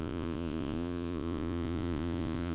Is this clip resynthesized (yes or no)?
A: yes